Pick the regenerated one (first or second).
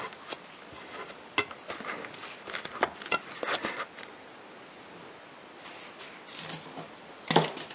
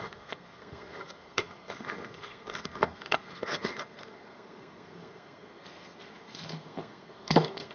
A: second